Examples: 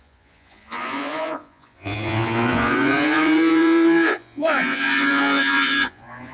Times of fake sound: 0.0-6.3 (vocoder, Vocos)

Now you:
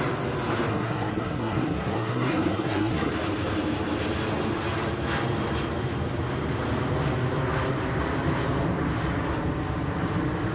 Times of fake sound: 0.7-3.1 (codec, SNAC)